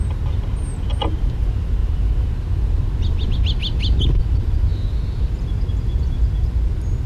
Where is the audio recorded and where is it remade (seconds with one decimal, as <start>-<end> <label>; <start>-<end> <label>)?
0.0-1.8 recorded; 1.8-2.8 remade; 2.8-7.1 recorded